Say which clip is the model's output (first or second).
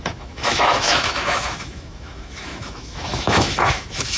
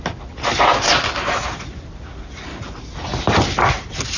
first